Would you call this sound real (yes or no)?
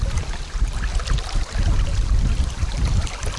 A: yes